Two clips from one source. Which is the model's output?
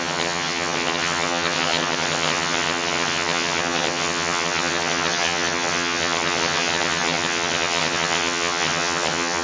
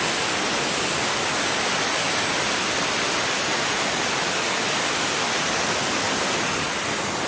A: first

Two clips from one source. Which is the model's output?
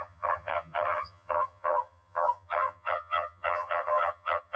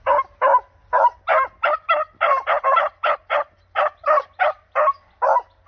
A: first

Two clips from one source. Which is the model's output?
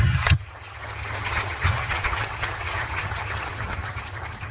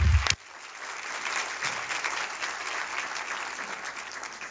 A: first